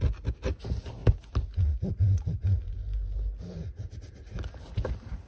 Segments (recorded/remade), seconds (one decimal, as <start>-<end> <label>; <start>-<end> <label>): 0.0-5.3 recorded